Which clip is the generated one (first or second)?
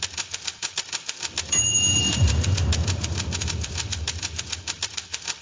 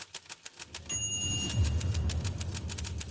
first